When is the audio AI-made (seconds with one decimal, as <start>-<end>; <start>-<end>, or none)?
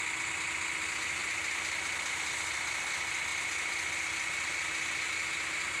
none